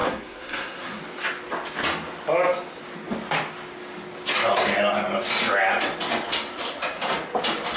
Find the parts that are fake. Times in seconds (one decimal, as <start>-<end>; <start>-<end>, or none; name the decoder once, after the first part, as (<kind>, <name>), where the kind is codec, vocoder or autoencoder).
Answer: 0.0-1.0 (codec, SNAC)